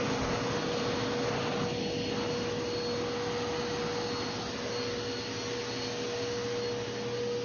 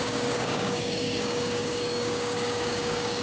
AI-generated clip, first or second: second